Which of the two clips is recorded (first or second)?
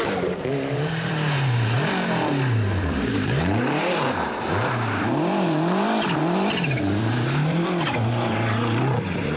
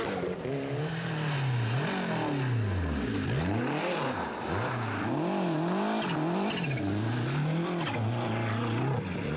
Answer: second